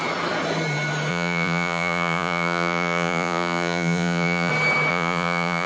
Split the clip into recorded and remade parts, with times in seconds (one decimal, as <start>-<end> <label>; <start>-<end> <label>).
0.0-1.1 recorded; 1.1-4.5 remade; 4.5-4.9 recorded; 4.9-5.7 remade